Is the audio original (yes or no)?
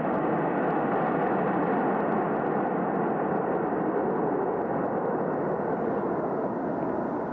yes